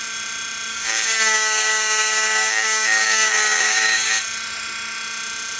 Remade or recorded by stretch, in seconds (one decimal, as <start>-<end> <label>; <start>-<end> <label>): 0.0-0.7 recorded; 0.7-4.1 remade; 4.1-5.6 recorded